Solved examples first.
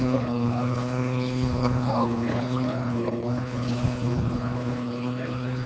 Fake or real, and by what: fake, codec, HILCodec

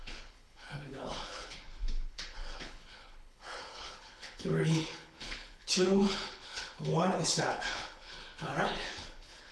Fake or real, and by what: fake, codec, HILCodec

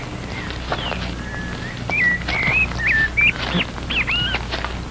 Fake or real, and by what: real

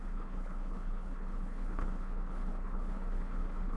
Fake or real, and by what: fake, codec, HILCodec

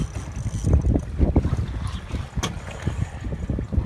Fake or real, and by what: real